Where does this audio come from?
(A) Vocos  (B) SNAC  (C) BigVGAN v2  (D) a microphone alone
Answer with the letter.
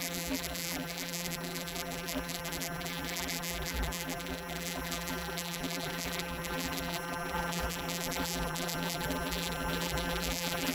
C